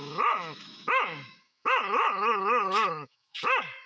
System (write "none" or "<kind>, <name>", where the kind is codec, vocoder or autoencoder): autoencoder, DAC-VAE